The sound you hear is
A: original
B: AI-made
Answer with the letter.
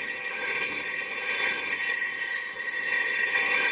B